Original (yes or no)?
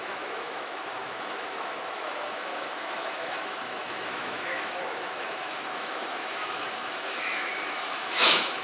no